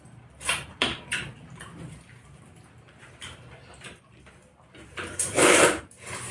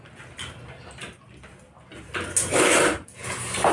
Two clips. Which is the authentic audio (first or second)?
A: second